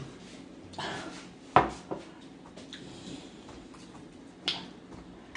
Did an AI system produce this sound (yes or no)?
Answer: no